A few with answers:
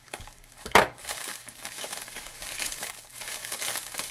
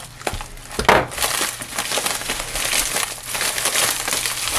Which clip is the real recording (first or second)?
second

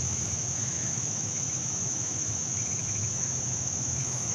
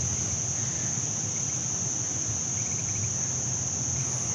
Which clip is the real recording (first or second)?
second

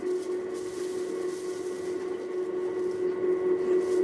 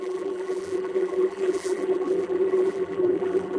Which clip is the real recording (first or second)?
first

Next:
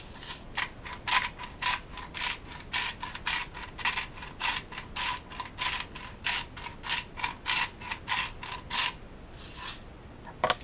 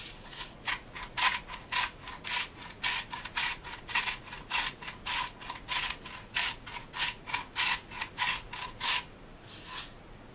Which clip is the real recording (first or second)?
first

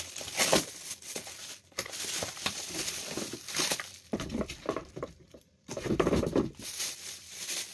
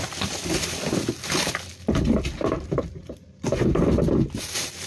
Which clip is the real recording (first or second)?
second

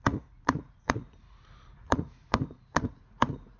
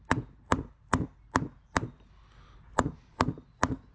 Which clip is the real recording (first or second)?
second